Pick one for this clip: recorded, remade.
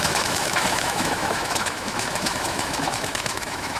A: remade